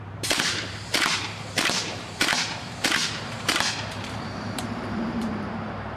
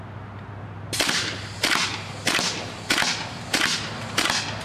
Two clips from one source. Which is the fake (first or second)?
first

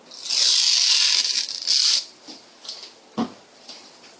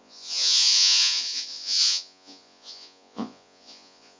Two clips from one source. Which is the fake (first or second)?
second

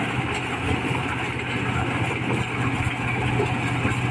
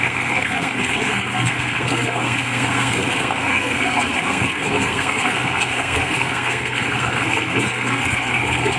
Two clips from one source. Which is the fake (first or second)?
second